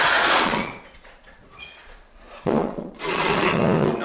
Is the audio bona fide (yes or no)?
no